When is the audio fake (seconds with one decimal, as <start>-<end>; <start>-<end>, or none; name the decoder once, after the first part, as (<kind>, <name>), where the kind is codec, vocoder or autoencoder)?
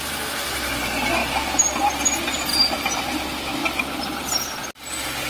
2.5-3.0 (vocoder, BigVGAN v2)